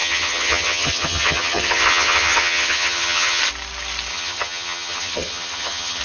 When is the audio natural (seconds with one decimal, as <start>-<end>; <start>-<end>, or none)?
3.4-4.1